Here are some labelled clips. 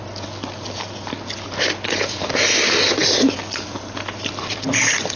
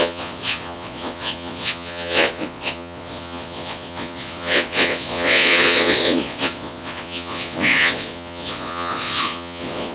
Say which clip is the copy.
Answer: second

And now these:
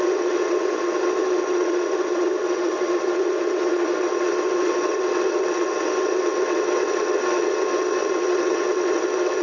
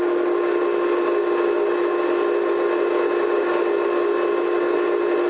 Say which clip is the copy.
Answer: first